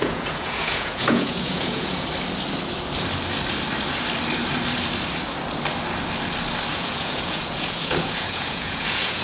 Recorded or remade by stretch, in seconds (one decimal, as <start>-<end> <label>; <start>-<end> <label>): 0.0-2.1 remade; 2.1-6.7 recorded; 6.7-9.2 remade